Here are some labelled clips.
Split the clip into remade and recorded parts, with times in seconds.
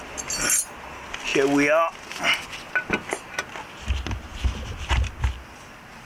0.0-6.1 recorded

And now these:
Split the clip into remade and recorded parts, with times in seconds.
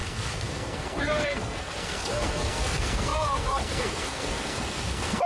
0.0-5.3 remade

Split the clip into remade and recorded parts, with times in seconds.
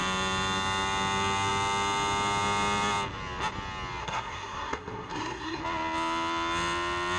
0.0-4.0 recorded; 4.0-5.6 remade; 5.6-7.2 recorded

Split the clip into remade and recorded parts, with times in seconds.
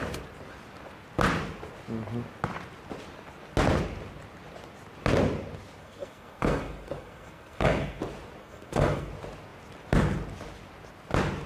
0.0-5.8 recorded; 5.8-8.0 remade; 8.0-8.4 recorded; 8.4-9.1 remade; 9.1-11.5 recorded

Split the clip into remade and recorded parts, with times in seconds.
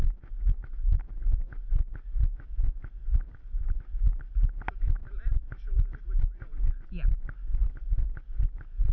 0.0-8.9 recorded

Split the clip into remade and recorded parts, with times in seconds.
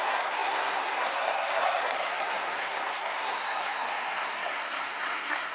0.0-5.5 remade